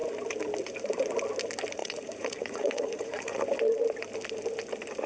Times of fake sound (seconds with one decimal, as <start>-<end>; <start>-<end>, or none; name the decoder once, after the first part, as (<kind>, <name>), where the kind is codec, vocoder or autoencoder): 1.8-3.4 (vocoder, Vocos)